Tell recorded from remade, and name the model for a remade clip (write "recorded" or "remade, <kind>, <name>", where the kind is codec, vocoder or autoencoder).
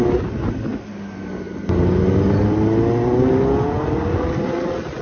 recorded